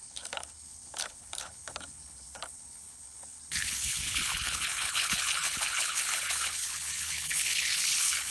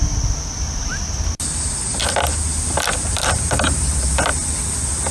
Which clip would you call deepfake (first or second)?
first